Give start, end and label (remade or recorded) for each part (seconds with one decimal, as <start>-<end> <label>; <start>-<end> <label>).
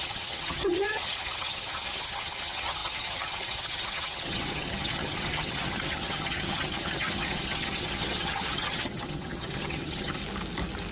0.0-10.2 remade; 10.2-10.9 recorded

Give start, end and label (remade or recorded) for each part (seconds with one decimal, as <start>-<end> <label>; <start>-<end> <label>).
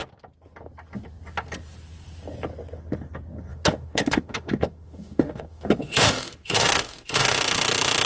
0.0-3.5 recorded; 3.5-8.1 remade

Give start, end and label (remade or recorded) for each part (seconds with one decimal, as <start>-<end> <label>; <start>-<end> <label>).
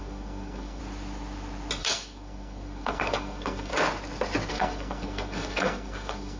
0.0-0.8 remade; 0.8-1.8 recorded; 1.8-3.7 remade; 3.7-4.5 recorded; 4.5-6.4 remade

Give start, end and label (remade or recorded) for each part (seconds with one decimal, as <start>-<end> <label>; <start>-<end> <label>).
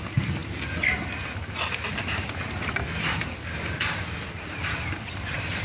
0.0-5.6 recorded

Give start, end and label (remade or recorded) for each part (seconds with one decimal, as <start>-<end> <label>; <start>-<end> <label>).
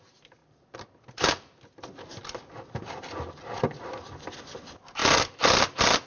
0.0-6.1 recorded